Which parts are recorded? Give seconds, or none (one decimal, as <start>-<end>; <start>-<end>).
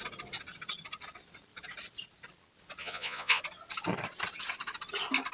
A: 0.0-2.8; 3.4-5.3